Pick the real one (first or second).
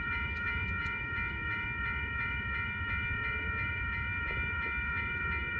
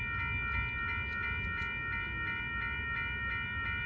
second